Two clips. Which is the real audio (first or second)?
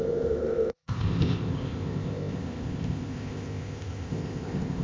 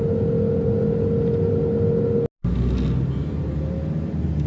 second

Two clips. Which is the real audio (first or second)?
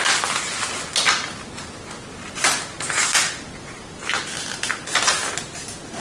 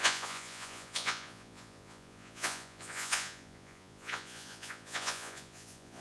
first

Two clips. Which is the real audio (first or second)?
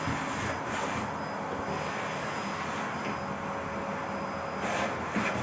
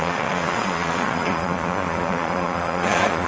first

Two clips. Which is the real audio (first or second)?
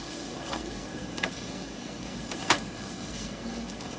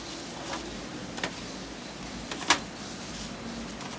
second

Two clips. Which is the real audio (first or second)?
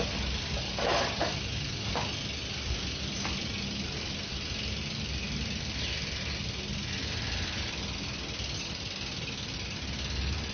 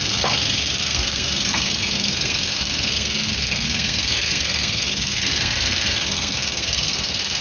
first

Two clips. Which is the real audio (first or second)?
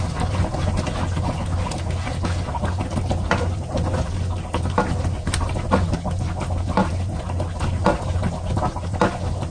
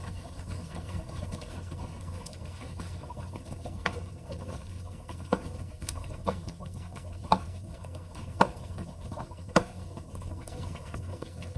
first